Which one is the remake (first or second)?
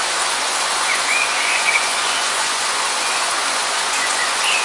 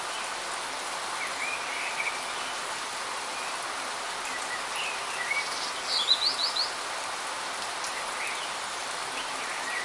first